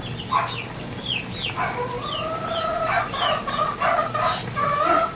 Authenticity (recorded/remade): recorded